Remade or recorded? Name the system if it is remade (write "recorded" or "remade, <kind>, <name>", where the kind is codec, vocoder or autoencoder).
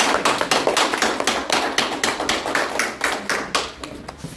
recorded